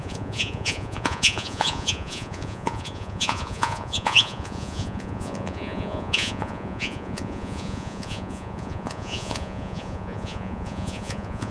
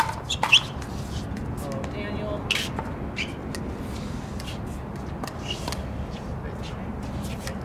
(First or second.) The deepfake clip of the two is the first